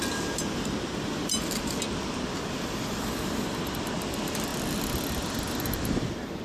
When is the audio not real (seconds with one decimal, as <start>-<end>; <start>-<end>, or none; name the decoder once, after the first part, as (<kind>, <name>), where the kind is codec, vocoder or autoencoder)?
none